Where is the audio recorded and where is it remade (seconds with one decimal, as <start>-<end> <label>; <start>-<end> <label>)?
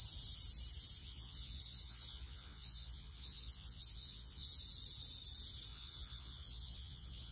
0.0-1.0 recorded; 1.0-4.5 remade; 4.5-5.7 recorded; 5.7-7.3 remade